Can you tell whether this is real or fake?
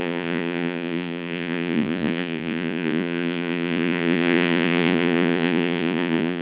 fake